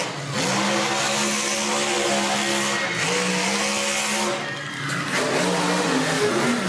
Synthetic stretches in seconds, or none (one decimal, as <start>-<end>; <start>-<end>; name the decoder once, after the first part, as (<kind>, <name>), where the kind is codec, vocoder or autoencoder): 5.6-6.3 (autoencoder, DAC-VAE)